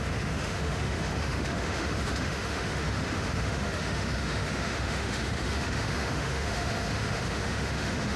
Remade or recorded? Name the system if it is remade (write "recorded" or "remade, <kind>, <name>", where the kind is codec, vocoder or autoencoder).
remade, autoencoder, DAC-VAE